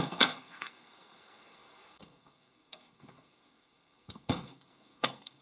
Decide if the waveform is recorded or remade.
remade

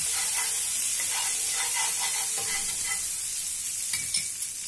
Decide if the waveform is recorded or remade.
recorded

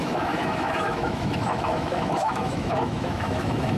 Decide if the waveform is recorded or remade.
remade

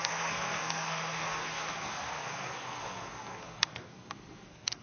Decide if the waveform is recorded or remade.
remade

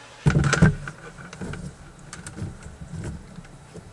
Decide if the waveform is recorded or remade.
recorded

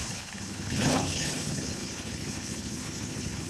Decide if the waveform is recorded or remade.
remade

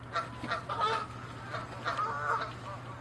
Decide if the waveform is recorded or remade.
recorded